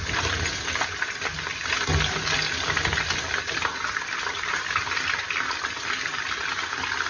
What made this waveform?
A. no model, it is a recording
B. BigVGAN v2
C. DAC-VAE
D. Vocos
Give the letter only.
A